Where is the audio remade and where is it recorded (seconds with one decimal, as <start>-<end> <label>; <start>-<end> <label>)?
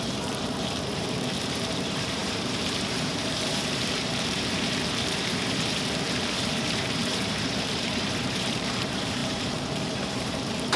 0.0-10.8 remade